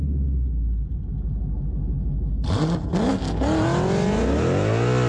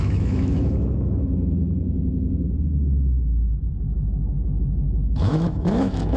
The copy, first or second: second